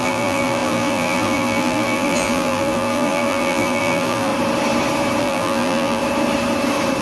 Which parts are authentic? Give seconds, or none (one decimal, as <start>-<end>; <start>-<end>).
4.3-5.2; 6.0-7.0